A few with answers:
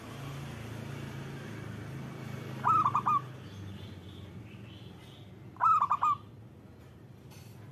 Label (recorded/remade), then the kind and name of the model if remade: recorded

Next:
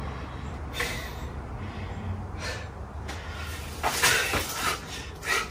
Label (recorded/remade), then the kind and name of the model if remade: recorded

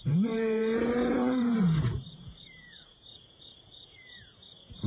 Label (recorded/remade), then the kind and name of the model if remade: remade, vocoder, Vocos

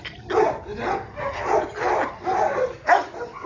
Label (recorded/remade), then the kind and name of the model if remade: recorded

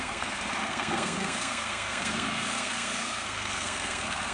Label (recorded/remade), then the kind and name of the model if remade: remade, codec, SNAC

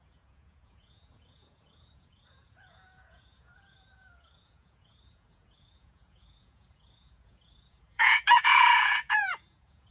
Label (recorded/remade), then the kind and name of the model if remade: remade, vocoder, Vocos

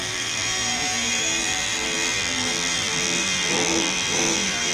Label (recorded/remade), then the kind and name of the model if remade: remade, vocoder, BigVGAN v2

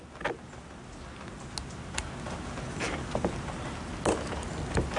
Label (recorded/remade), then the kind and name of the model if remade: recorded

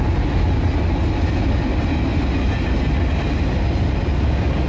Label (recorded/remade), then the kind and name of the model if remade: recorded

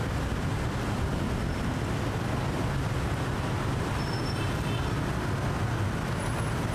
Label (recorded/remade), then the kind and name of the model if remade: recorded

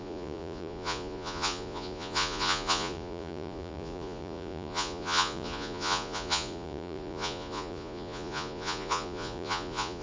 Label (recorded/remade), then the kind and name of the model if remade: remade, vocoder, Vocos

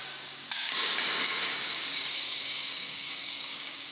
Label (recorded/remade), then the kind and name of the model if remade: remade, codec, DAC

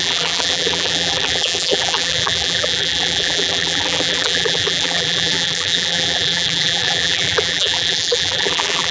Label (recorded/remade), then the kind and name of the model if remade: remade, vocoder, BigVGAN v2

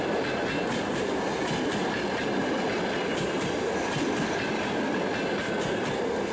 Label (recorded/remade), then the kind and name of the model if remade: recorded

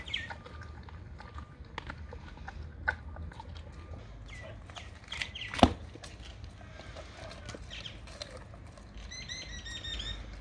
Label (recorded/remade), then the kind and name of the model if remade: recorded